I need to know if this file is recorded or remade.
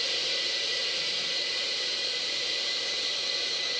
remade